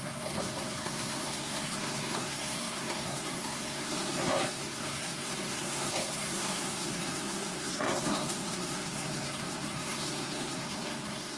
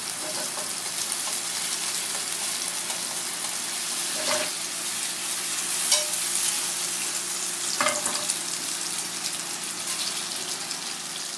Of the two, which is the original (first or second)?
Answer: second